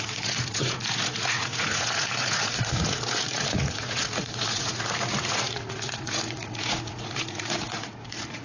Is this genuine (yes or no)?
no